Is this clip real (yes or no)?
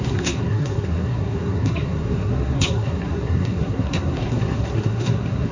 no